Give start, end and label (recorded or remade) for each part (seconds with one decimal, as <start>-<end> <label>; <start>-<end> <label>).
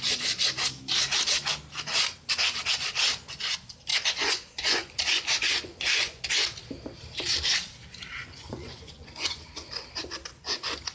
0.0-3.9 recorded; 3.9-6.2 remade; 6.2-8.2 recorded; 8.2-9.8 remade; 9.8-10.9 recorded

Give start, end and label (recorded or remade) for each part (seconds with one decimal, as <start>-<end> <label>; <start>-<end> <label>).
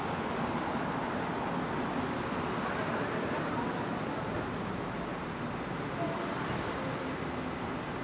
0.0-8.0 recorded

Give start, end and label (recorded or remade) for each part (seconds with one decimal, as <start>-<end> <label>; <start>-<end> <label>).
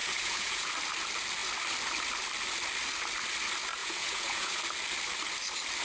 0.0-0.7 remade; 0.7-3.8 recorded; 3.8-4.6 remade; 4.6-5.8 recorded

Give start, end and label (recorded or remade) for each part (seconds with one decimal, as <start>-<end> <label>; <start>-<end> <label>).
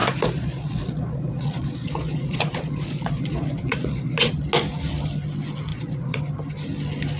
0.0-4.3 remade; 4.3-5.7 recorded; 5.7-6.2 remade; 6.2-7.2 recorded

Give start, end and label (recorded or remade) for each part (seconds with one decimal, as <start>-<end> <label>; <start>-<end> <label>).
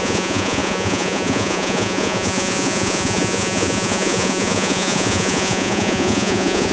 0.0-6.7 remade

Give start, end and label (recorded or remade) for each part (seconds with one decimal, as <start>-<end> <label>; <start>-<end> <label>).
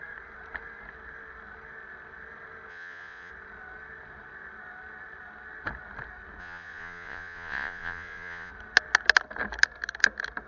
0.0-2.7 recorded; 2.7-3.3 remade; 3.3-6.4 recorded; 6.4-8.5 remade; 8.5-10.5 recorded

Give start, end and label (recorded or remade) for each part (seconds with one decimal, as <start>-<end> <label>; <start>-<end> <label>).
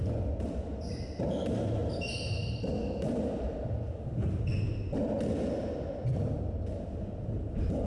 0.0-7.9 recorded